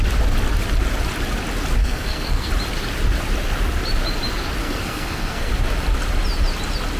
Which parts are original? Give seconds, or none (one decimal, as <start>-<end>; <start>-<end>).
0.0-1.8; 2.5-4.6; 5.5-7.0